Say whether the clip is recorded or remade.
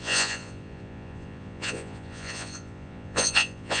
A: remade